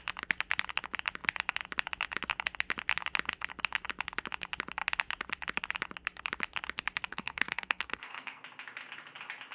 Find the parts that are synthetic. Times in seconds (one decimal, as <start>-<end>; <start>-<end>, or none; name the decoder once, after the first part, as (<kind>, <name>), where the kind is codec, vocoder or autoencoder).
7.1-8.4 (codec, SNAC)

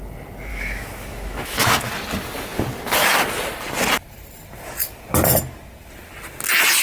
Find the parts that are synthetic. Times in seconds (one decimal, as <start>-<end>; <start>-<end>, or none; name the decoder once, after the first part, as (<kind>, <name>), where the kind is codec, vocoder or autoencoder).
0.5-1.7 (autoencoder, DAC-VAE)

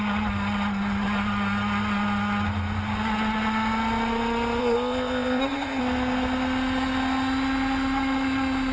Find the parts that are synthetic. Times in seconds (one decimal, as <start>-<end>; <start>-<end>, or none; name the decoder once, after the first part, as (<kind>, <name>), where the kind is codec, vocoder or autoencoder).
4.6-5.8 (codec, ZipCodec)

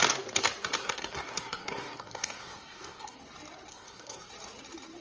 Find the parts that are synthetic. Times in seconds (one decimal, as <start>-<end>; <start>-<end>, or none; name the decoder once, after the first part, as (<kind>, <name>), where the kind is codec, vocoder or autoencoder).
0.8-3.2 (codec, SNAC); 3.7-4.3

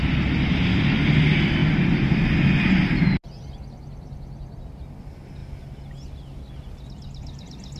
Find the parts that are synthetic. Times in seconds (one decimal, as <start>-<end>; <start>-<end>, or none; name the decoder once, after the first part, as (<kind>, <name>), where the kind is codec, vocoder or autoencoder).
none

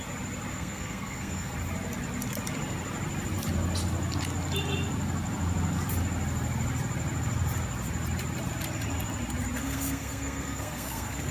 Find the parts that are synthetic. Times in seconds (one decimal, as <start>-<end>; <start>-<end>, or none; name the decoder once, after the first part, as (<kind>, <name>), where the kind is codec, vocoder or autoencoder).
0.5-1.5 (codec, SNAC); 9.6-11.3